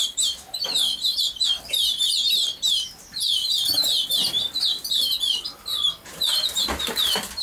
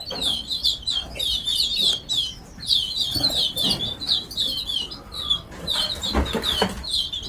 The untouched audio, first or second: second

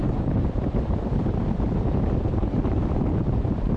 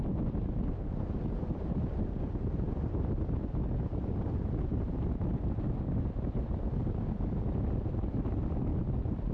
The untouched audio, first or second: second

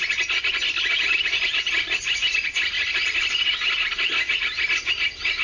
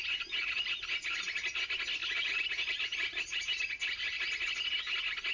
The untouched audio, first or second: second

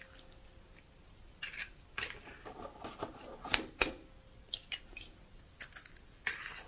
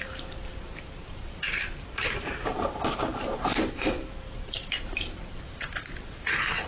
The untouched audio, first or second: first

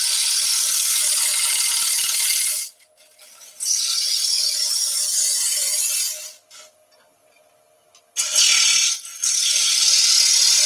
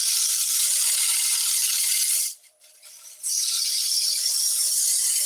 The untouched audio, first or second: first